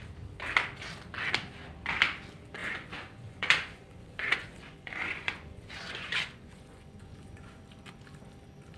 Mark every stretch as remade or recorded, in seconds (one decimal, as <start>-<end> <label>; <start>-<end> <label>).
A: 0.0-2.6 recorded; 2.6-7.6 remade; 7.6-8.8 recorded